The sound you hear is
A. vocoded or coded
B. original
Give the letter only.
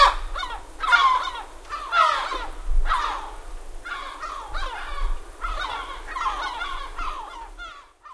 B